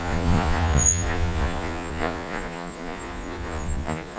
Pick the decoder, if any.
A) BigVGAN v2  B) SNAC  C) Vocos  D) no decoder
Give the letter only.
C